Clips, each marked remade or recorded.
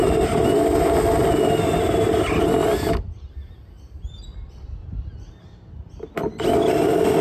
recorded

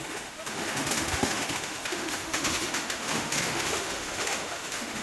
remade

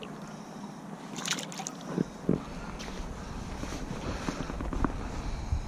recorded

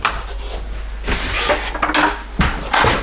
recorded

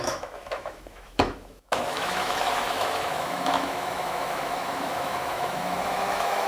remade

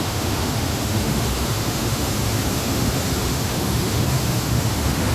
remade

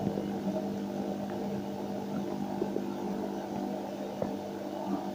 recorded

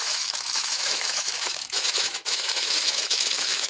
remade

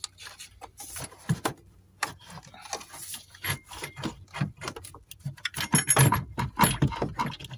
recorded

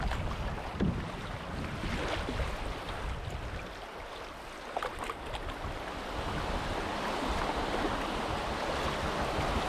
recorded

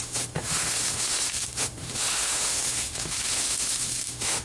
remade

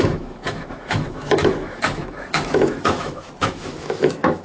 remade